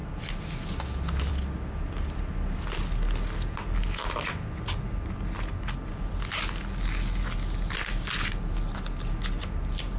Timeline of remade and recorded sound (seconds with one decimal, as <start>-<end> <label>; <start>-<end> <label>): 0.0-10.0 recorded